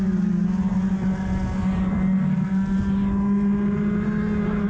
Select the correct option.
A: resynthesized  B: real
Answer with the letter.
B